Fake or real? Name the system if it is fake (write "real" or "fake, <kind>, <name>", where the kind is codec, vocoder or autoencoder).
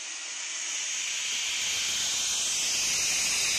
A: real